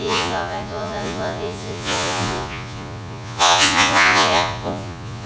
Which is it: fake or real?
fake